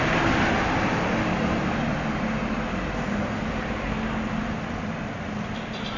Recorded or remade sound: recorded